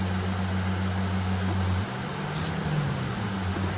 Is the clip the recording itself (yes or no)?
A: yes